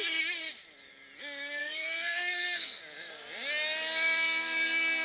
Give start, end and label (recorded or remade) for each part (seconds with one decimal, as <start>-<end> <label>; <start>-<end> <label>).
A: 0.0-1.6 recorded; 1.6-2.8 remade; 2.8-5.0 recorded